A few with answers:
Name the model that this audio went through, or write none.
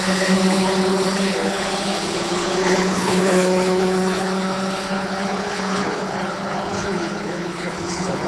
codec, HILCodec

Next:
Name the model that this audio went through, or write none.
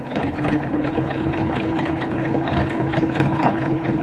codec, HILCodec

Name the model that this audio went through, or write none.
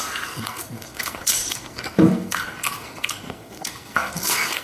codec, SNAC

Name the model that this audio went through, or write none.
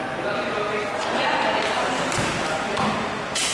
none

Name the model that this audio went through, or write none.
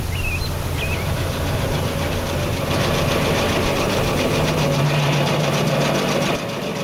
none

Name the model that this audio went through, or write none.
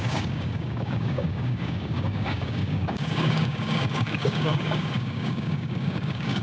codec, DAC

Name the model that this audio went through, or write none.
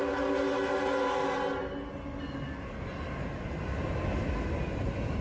none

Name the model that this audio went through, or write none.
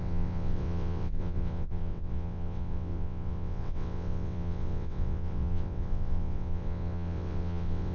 vocoder, WaveNeXt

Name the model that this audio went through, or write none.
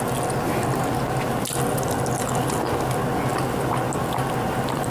none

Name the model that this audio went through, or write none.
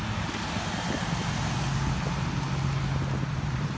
none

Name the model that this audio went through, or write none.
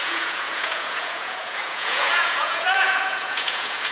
vocoder, Vocos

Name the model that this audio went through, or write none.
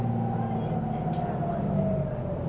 none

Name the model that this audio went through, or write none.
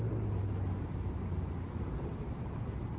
none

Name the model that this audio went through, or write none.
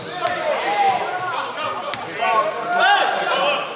none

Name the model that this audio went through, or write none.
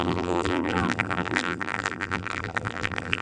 vocoder, BigVGAN v2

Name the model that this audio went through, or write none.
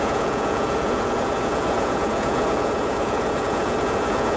vocoder, Vocos